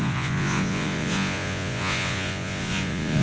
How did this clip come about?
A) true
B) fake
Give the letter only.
B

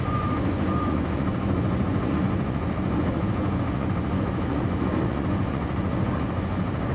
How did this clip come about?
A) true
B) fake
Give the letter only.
B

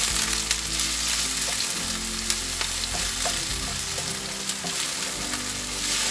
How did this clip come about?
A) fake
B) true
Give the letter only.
B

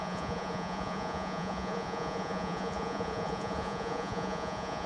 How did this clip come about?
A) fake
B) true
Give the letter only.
A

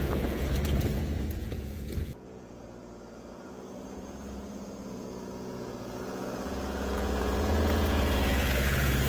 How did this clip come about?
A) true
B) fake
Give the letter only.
B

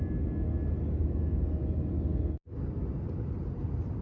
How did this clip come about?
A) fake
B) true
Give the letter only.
B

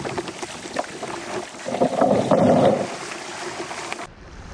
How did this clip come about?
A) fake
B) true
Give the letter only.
B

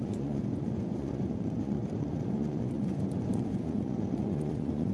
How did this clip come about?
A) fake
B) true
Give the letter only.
A